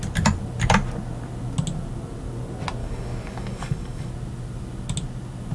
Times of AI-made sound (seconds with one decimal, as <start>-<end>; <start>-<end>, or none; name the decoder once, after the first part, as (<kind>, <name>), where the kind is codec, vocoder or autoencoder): 2.8-4.1 (codec, DAC)